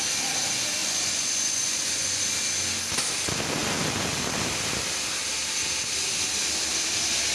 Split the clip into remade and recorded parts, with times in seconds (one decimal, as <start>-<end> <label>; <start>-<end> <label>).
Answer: 0.0-0.8 recorded; 0.8-2.2 remade; 2.2-7.3 recorded